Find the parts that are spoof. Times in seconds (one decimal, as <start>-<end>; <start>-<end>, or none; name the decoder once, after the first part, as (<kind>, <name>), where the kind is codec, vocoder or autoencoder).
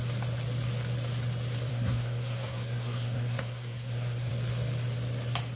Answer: 1.7-4.3 (codec, SNAC)